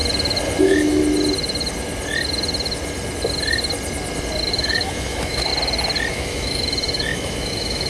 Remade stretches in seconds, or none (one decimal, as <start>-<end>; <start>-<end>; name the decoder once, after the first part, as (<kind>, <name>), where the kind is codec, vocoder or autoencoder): 0.6-1.0 (autoencoder, DAC-VAE); 4.5-5.5; 6.1-7.9